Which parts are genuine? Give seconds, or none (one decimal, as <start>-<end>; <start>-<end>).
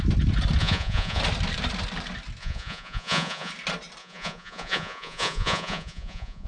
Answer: 0.0-0.6; 1.2-2.4; 3.5-4.0